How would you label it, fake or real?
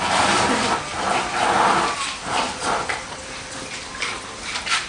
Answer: fake